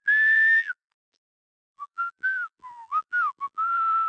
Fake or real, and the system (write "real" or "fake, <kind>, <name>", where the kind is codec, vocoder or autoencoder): fake, vocoder, BigVGAN v2